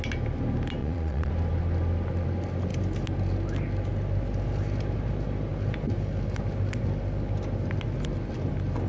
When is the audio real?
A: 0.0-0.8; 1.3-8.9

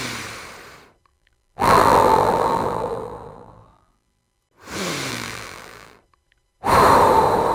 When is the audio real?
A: 0.0-1.1; 4.4-5.1; 6.0-7.5

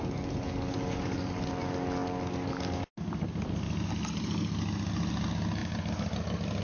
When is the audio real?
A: 0.0-6.6

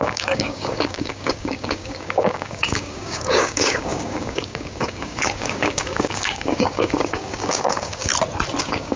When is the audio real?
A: 8.1-8.6

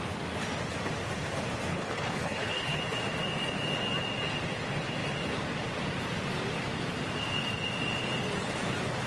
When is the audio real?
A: 0.0-1.7; 2.8-9.1